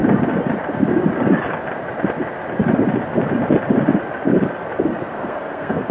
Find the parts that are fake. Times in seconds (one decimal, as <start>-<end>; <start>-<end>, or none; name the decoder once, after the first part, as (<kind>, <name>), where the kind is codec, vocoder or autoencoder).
5.1-5.9 (codec, SNAC)